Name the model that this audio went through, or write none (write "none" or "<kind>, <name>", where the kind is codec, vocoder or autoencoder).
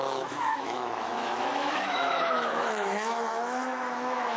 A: autoencoder, DAC-VAE